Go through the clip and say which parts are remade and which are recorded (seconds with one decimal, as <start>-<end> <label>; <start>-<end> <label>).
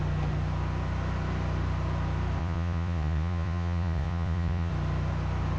0.0-2.4 recorded; 2.4-4.7 remade; 4.7-5.6 recorded